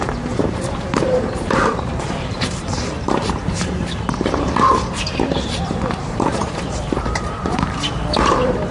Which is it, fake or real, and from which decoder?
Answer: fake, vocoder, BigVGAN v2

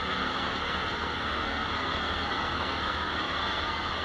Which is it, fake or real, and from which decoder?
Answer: fake, codec, SNAC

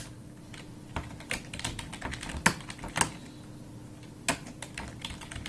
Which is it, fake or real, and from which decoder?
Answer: real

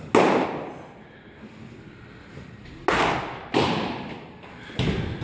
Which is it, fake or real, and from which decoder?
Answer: real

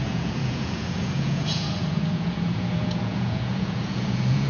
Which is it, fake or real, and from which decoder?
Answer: fake, vocoder, Vocos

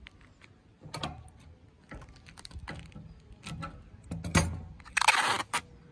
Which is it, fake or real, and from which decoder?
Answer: real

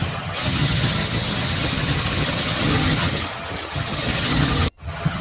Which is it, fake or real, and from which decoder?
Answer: fake, vocoder, HiFi-GAN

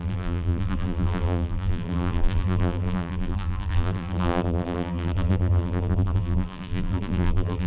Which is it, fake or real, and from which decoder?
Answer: fake, vocoder, BigVGAN v2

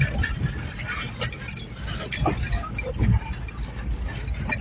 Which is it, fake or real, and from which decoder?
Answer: real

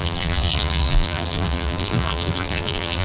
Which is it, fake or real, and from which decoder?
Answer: fake, vocoder, BigVGAN v2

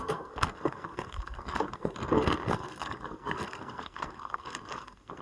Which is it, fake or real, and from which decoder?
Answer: fake, codec, SNAC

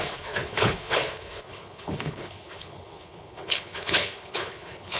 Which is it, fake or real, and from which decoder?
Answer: fake, codec, HILCodec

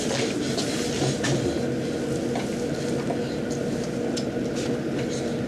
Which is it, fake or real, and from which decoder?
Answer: real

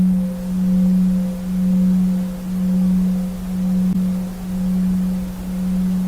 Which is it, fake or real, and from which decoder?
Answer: real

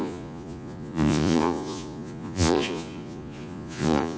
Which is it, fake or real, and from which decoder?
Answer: fake, vocoder, Vocos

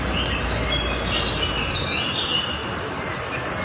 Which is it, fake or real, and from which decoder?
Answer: real